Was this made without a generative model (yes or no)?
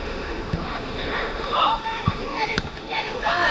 no